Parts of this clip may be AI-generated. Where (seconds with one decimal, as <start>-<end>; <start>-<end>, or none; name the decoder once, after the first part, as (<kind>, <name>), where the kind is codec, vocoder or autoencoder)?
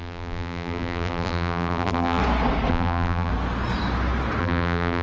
0.0-2.2 (vocoder, BigVGAN v2); 2.7-3.3; 4.4-5.0